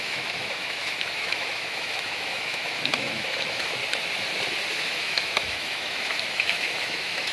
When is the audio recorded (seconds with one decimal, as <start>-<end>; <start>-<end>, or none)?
3.8-4.7